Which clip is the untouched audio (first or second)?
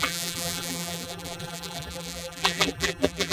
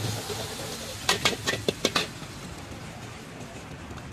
second